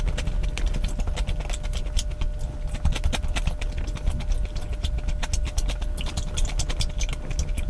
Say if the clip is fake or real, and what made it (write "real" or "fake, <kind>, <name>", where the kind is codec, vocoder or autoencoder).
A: real